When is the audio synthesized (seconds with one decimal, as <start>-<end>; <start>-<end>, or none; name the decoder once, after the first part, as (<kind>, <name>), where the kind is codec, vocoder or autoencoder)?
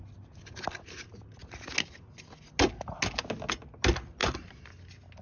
none